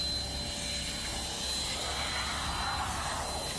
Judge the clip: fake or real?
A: real